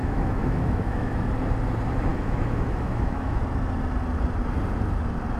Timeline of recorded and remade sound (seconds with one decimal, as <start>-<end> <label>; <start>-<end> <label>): 0.0-1.2 remade; 1.2-2.1 recorded; 2.1-3.4 remade; 3.4-5.4 recorded